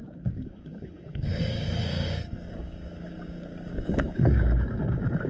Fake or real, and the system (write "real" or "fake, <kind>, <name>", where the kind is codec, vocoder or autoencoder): fake, codec, DAC